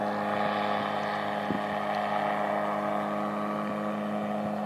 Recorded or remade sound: recorded